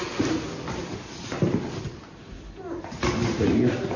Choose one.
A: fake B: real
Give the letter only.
B